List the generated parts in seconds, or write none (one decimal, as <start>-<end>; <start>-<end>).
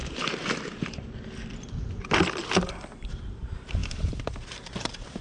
3.1-5.2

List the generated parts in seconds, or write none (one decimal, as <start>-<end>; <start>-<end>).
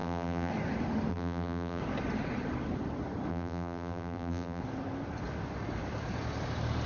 0.0-0.5; 1.1-1.8; 3.3-4.6